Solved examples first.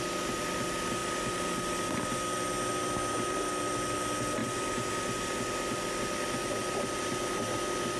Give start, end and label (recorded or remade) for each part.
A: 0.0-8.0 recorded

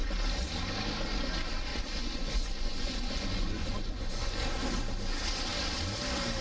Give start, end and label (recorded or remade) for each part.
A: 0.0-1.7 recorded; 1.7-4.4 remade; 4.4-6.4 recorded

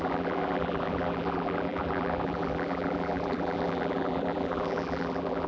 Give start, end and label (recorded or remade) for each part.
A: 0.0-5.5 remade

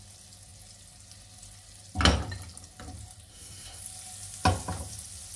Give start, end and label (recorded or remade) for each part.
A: 0.0-3.3 recorded; 3.3-3.8 remade; 3.8-5.4 recorded